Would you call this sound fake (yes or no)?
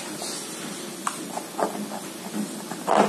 no